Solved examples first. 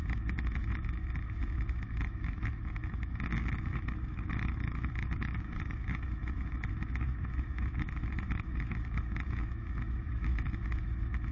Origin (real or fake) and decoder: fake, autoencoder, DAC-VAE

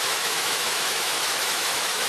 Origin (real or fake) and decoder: fake, autoencoder, DAC-VAE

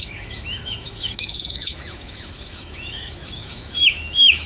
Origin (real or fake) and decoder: fake, autoencoder, DAC-VAE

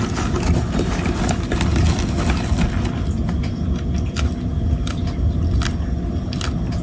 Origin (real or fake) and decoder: real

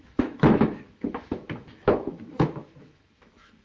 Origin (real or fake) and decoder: fake, autoencoder, DAC-VAE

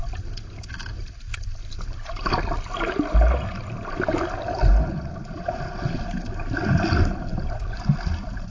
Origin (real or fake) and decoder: real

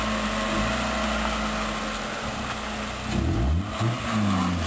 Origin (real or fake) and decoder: real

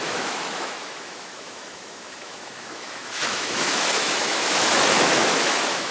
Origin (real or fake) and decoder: fake, autoencoder, DAC-VAE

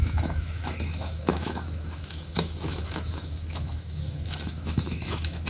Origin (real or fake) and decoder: fake, autoencoder, DAC-VAE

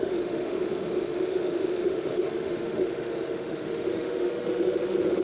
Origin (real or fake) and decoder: fake, autoencoder, DAC-VAE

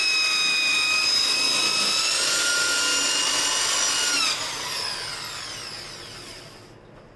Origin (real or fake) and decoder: real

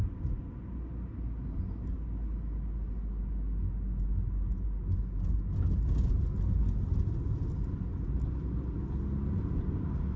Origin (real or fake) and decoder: real